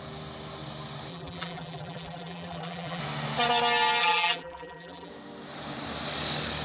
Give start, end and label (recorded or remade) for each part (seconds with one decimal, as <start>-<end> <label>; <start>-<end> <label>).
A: 0.0-1.1 recorded; 1.1-3.0 remade; 3.0-4.0 recorded; 4.0-5.1 remade; 5.1-6.6 recorded